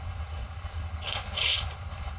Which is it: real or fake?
fake